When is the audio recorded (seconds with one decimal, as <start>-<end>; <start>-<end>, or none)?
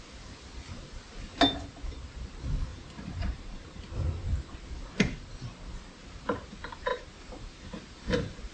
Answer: 0.0-2.7; 3.8-6.9